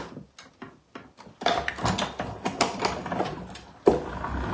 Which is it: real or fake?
real